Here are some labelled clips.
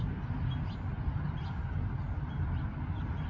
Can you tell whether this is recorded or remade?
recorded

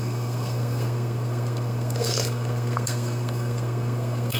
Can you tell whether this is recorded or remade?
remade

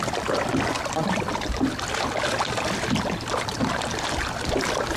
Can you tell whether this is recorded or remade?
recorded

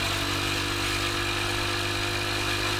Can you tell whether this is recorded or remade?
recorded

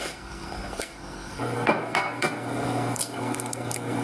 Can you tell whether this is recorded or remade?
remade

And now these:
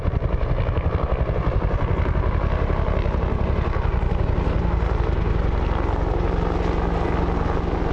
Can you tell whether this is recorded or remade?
recorded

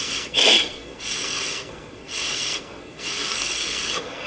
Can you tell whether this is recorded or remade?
remade